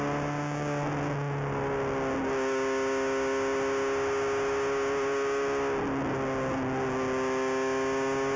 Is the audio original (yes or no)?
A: yes